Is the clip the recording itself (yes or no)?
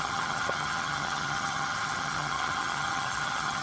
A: no